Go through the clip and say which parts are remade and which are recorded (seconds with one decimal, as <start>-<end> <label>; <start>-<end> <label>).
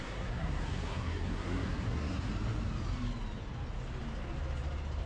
0.0-2.3 remade; 2.3-5.1 recorded